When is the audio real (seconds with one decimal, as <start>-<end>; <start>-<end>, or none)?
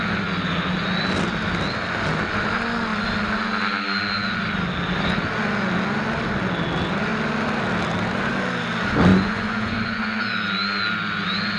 0.0-9.1; 10.2-11.6